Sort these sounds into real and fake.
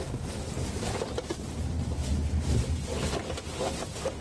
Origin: real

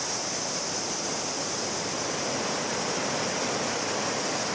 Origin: real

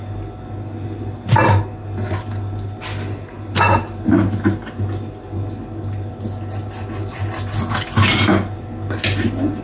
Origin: real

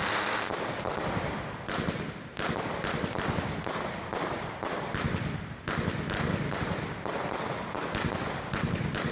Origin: real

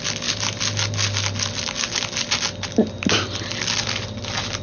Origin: real